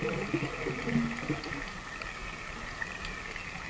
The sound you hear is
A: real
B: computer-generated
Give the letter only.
A